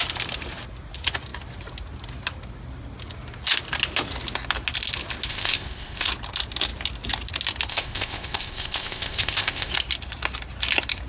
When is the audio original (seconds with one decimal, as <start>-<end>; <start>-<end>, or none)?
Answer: 0.0-5.3; 6.1-7.7; 9.7-11.1